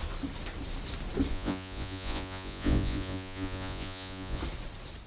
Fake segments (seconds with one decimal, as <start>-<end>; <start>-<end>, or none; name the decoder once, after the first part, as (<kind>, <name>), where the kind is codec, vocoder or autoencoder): 1.3-4.4 (vocoder, Vocos)